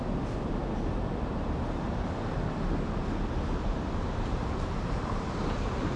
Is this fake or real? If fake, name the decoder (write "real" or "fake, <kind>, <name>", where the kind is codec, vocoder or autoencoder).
real